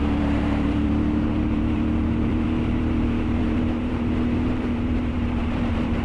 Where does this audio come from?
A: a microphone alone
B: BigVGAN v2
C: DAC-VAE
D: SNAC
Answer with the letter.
B